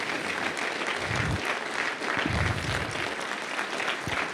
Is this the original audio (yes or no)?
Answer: yes